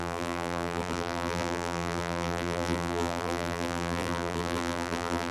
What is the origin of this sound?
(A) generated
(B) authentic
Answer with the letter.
A